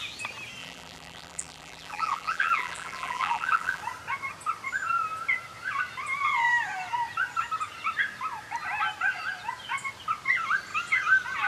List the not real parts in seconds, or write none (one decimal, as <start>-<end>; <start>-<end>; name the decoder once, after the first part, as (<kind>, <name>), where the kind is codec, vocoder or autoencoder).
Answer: 0.6-3.8 (vocoder, BigVGAN v2)